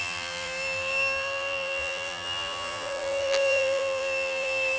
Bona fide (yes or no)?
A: no